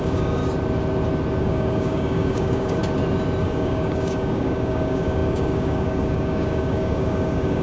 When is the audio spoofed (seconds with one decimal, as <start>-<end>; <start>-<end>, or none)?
0.0-0.4; 1.4-2.8; 3.4-7.6